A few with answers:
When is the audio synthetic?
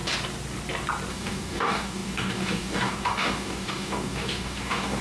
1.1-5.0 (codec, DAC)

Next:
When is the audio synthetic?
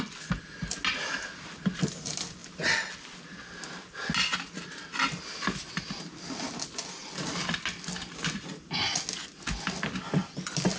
none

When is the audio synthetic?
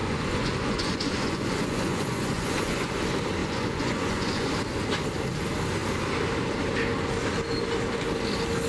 0.0-2.9 (vocoder, Vocos); 3.4-4.5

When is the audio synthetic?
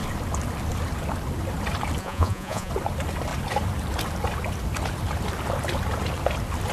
2.0-2.7 (vocoder, Vocos)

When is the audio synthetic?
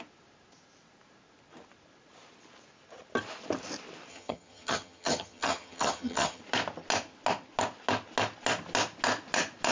4.1-6.4 (vocoder, HiFi-GAN)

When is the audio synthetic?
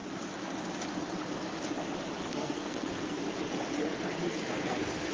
2.2-3.2 (codec, SNAC); 3.8-5.1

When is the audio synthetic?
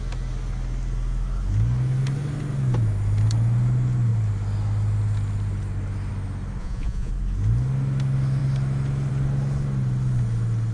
6.6-7.1 (vocoder, Vocos)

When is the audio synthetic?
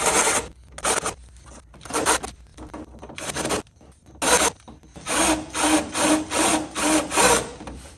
none